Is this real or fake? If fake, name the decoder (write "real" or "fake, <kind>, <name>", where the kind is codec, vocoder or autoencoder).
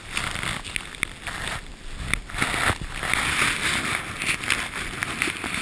real